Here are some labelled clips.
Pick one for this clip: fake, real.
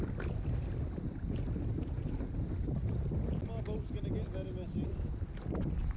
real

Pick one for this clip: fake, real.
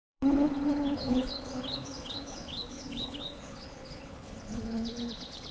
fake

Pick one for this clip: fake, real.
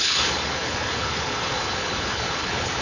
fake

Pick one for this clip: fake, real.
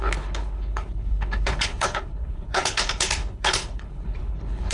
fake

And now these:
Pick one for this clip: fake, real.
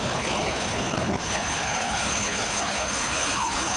fake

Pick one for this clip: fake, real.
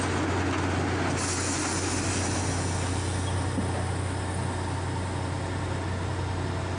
real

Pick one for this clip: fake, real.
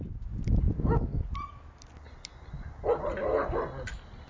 real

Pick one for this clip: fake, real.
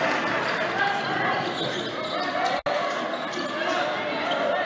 real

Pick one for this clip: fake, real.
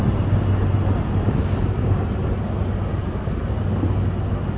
real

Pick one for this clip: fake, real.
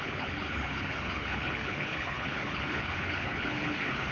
fake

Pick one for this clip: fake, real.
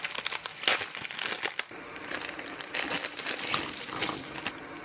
real